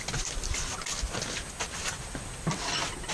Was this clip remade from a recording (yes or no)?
no